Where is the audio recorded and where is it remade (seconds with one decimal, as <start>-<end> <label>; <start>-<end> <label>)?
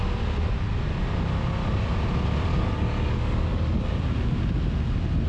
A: 0.0-2.5 recorded; 2.5-4.0 remade; 4.0-5.3 recorded